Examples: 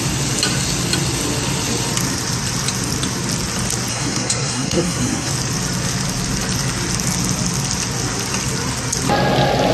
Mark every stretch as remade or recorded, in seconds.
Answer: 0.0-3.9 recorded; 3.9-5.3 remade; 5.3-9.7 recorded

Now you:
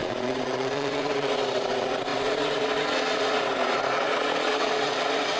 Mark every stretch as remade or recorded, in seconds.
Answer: 0.0-5.4 remade